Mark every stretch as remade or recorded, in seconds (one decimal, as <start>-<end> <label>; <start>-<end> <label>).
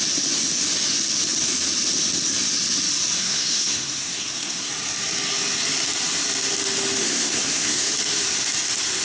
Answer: 0.0-3.2 recorded; 3.2-4.7 remade; 4.7-7.0 recorded; 7.0-7.9 remade; 7.9-9.0 recorded